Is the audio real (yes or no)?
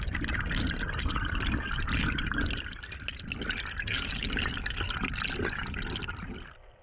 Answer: yes